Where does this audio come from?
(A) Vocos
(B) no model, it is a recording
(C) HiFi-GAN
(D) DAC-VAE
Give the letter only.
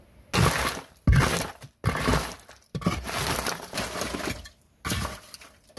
B